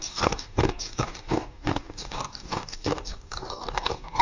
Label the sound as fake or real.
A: fake